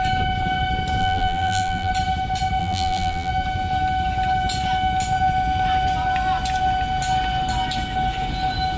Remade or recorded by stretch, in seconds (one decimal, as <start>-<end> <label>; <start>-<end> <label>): 0.0-1.0 recorded; 1.0-1.9 remade; 1.9-2.6 recorded; 2.6-3.3 remade; 3.3-8.8 recorded